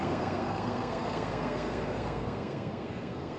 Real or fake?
fake